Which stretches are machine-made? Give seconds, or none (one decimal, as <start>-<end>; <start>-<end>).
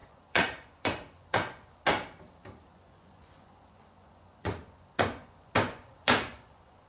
0.0-1.8; 2.7-6.9